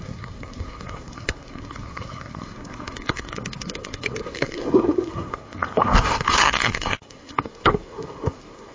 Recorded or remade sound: remade